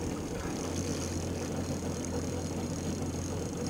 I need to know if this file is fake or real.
real